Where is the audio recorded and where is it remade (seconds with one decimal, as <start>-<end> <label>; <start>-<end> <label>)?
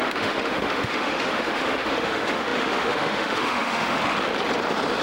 0.0-4.0 remade; 4.0-5.0 recorded